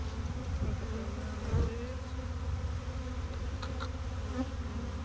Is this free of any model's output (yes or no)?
yes